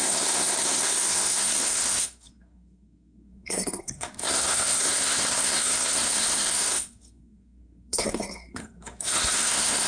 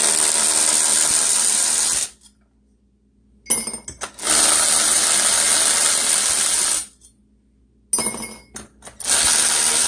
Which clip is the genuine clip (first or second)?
second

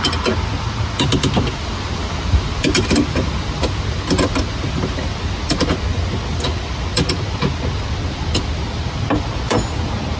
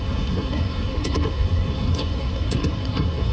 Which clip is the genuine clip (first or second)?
first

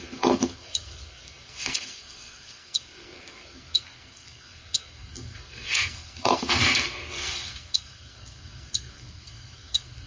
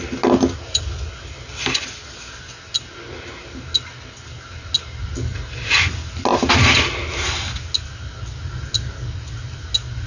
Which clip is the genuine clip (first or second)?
second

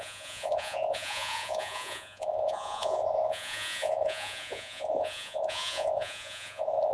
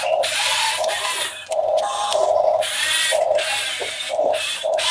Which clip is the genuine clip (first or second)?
second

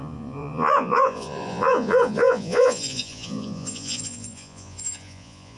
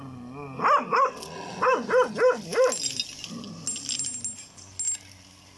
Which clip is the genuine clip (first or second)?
second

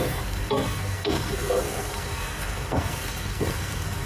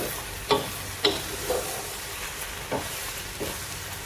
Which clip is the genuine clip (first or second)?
second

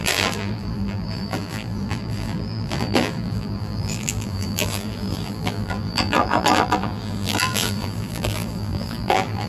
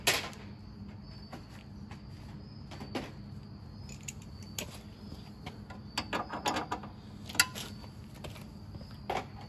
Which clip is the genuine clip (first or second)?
second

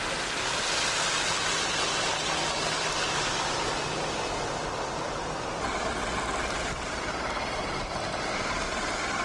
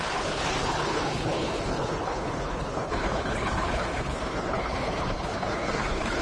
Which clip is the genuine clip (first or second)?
first